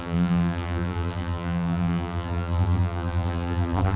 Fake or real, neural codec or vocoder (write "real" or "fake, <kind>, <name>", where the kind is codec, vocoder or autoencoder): fake, vocoder, BigVGAN v2